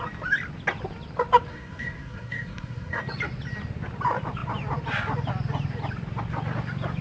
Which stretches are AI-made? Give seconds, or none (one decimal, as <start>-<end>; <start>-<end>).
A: 1.5-3.0